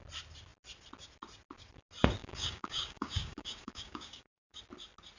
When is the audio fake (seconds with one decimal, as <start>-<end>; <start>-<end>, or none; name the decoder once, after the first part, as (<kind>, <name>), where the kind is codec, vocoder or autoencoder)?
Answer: 2.2-4.6 (codec, DAC)